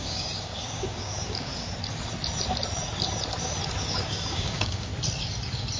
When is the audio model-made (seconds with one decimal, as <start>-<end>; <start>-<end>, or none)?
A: 0.0-1.5; 3.8-4.9